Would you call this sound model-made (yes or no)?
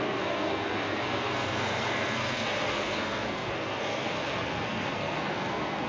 yes